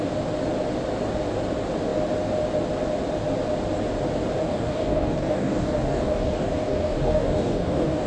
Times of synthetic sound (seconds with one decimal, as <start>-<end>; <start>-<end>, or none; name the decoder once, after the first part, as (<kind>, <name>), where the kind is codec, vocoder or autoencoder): 4.4-8.1 (codec, DAC)